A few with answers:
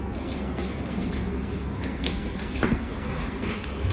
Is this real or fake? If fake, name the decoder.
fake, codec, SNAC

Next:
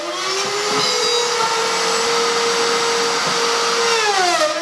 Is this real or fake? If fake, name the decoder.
real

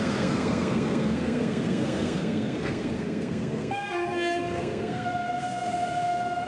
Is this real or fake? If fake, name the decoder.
fake, codec, SNAC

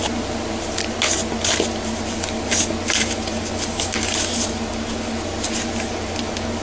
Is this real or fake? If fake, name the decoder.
real